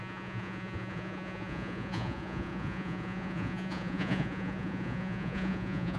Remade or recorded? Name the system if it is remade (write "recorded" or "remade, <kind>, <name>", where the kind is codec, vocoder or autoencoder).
remade, vocoder, Vocos